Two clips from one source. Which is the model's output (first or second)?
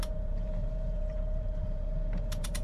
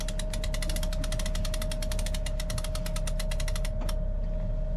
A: first